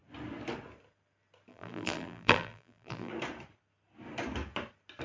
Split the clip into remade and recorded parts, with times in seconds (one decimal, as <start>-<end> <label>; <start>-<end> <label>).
0.0-1.5 recorded; 1.5-3.1 remade; 3.1-5.0 recorded